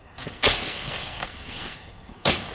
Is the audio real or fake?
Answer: fake